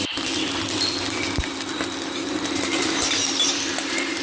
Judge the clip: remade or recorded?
recorded